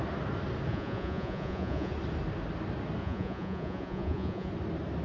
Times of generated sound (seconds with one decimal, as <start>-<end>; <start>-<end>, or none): 0.7-1.9; 3.0-4.5